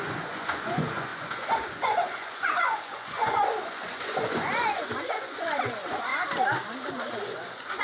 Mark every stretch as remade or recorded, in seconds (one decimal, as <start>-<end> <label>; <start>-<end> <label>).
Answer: 0.0-6.1 remade; 6.1-7.1 recorded; 7.1-7.8 remade